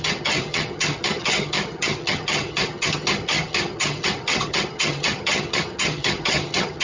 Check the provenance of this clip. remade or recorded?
remade